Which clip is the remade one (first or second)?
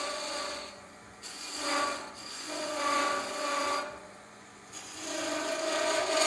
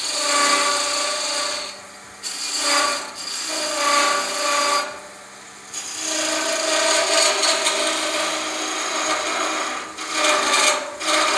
first